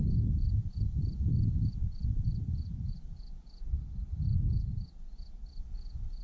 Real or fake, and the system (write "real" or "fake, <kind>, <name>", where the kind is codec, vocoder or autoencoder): fake, vocoder, Vocos